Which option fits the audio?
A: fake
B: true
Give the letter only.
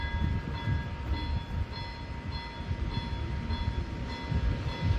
B